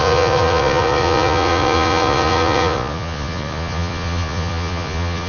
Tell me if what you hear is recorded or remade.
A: remade